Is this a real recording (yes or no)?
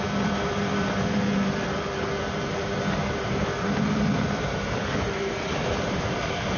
no